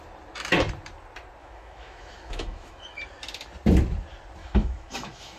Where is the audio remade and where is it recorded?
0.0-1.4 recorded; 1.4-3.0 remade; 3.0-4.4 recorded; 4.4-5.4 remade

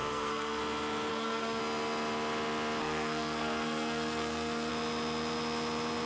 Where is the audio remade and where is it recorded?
0.0-0.6 remade; 0.6-1.1 recorded; 1.1-1.6 remade; 1.6-2.8 recorded; 2.8-4.7 remade; 4.7-6.1 recorded

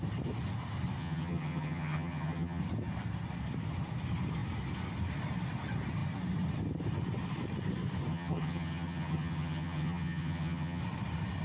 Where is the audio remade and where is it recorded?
0.0-1.0 recorded; 1.0-2.6 remade; 2.6-8.1 recorded; 8.1-10.8 remade; 10.8-11.4 recorded

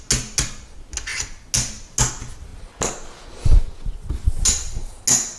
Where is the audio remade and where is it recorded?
0.0-5.4 recorded

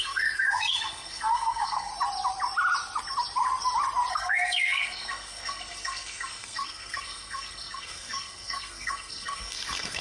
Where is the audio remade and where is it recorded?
0.0-1.9 remade; 1.9-4.1 recorded; 4.1-10.0 remade

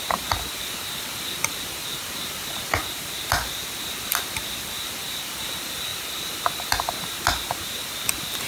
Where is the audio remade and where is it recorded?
0.0-8.5 recorded

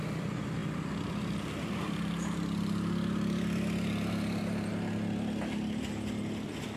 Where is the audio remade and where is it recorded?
0.0-6.8 recorded